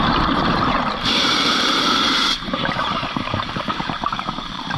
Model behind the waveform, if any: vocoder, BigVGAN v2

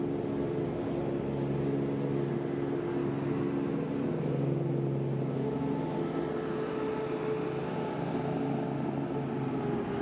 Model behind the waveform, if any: none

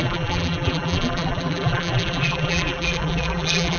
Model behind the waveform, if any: vocoder, BigVGAN v2